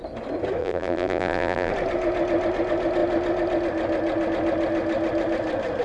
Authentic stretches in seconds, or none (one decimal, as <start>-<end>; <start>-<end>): 0.0-0.6; 1.7-5.8